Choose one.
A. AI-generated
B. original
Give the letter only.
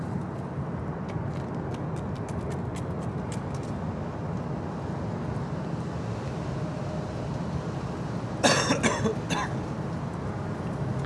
B